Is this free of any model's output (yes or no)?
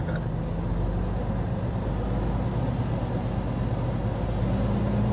yes